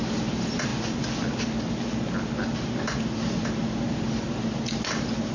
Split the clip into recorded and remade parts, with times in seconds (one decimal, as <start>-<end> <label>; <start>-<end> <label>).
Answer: 0.0-5.3 recorded